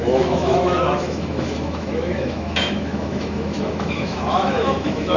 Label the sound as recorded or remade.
remade